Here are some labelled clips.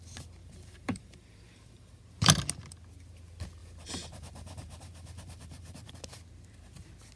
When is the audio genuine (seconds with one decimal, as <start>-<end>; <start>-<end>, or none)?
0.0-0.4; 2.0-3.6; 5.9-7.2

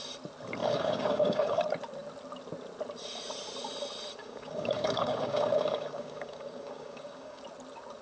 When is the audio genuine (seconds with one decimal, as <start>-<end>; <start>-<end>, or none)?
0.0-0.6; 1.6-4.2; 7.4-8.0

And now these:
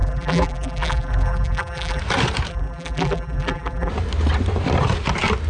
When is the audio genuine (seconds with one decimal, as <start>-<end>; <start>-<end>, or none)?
2.0-2.5; 3.9-5.5

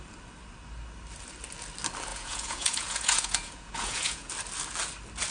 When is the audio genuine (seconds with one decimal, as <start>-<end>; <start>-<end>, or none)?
0.0-2.1; 4.3-5.3